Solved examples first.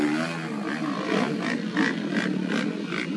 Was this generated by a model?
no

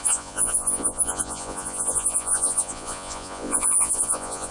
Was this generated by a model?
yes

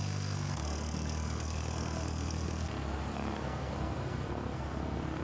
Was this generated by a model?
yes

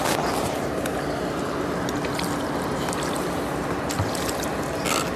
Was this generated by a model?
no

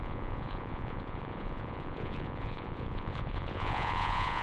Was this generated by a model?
yes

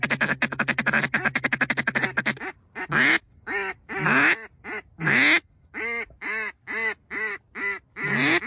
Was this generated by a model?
no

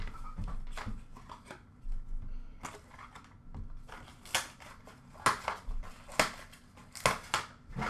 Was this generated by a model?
no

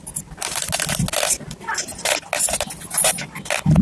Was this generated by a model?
no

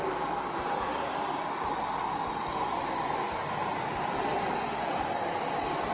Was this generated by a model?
no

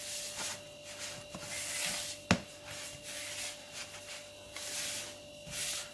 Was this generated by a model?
no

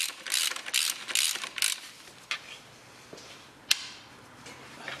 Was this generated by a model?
no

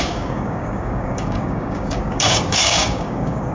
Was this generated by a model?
yes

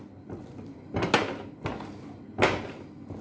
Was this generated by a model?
no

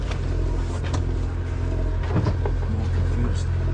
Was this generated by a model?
no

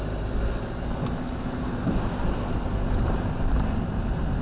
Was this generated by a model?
no